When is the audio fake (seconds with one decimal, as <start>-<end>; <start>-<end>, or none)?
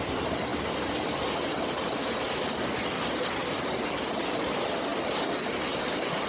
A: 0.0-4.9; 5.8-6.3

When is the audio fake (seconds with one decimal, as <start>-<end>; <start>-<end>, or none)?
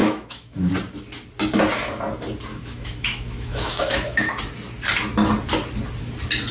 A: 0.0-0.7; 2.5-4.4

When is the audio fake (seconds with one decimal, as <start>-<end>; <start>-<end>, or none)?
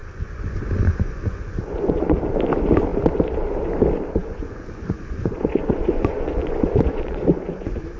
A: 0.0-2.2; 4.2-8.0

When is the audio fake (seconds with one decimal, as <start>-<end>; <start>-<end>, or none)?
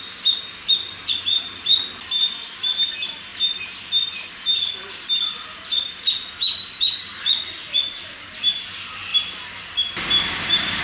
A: none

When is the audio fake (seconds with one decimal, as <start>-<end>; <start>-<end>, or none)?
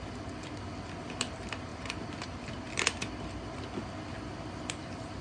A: none